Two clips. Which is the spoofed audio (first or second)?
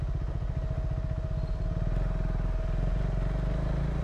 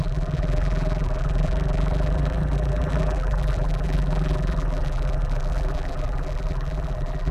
second